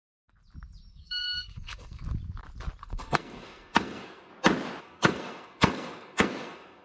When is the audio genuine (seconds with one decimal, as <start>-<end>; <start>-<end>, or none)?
0.0-0.9; 2.0-2.8; 4.3-4.8